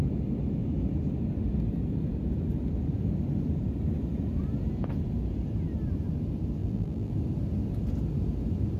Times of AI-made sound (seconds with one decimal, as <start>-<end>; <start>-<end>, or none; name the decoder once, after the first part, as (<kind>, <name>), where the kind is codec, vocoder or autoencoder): 6.6-7.1 (vocoder, BigVGAN v2)